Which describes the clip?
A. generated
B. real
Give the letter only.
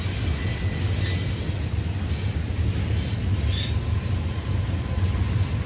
B